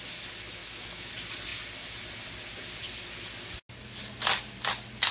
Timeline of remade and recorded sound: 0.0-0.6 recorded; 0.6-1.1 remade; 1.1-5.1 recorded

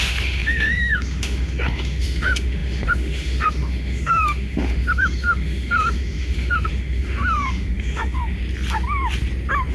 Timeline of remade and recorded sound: 0.0-8.4 remade; 8.4-9.7 recorded

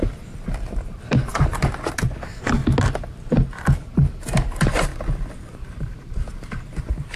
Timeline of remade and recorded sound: 0.0-0.7 recorded; 0.7-2.6 remade; 2.6-3.8 recorded; 3.8-4.9 remade; 4.9-5.4 recorded; 5.4-7.2 remade

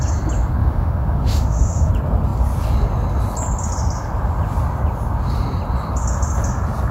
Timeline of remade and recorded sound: 0.0-0.6 recorded; 0.6-1.9 remade; 1.9-6.9 recorded

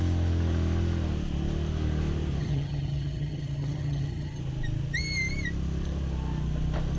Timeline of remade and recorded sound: 0.0-2.4 recorded; 2.4-4.4 remade; 4.4-7.0 recorded

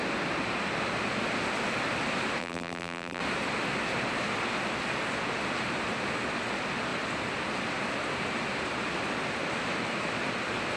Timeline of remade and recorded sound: 0.0-2.4 recorded; 2.4-3.2 remade; 3.2-10.8 recorded

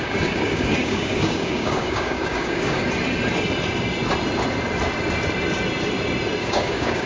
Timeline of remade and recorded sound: 0.0-2.8 remade; 2.8-6.4 recorded; 6.4-7.1 remade